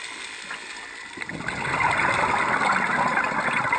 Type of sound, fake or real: real